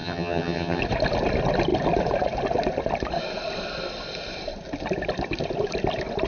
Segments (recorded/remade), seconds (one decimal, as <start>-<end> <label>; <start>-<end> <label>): 0.0-0.8 remade; 0.8-6.3 recorded